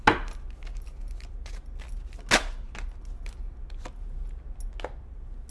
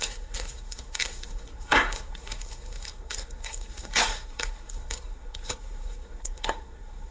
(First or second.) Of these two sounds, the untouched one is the first